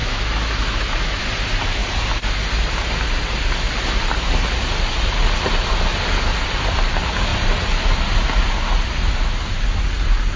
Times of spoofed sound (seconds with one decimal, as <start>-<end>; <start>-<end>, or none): 0.0-1.2